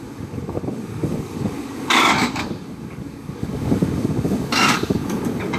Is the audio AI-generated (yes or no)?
yes